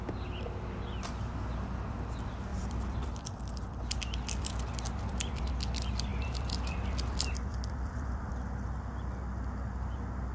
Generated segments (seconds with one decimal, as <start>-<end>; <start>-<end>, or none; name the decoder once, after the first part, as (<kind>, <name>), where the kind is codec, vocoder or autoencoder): 2.5-5.5 (vocoder, BigVGAN v2); 6.1-8.3